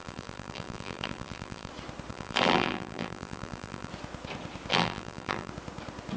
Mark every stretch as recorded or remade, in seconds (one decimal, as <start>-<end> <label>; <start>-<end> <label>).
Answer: 0.0-1.7 remade; 1.7-2.1 recorded; 2.1-3.9 remade; 3.9-4.7 recorded; 4.7-5.5 remade; 5.5-6.2 recorded